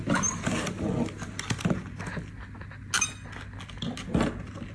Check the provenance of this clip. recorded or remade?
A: recorded